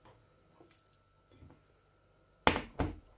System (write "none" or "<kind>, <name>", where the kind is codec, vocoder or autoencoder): none